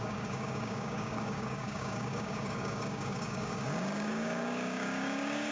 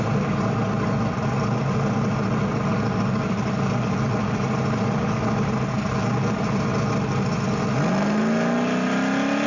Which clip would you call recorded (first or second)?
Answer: second